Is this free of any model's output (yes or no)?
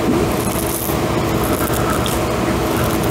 yes